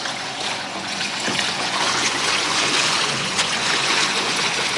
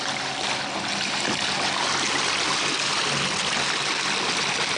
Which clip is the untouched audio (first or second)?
second